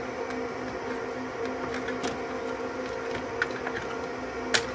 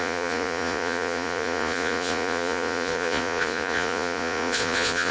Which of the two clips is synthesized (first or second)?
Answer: second